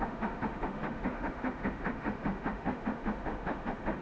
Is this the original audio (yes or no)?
no